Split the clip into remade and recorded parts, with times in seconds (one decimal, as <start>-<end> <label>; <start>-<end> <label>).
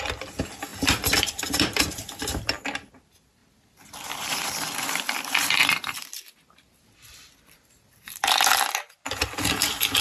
0.0-0.7 recorded; 0.7-1.4 remade; 1.4-3.4 recorded; 3.4-8.4 remade; 8.4-10.0 recorded